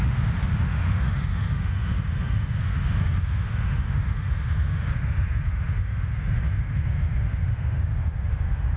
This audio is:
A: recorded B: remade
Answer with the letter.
B